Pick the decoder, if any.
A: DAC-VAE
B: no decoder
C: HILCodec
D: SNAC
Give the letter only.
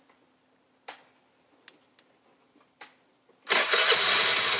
B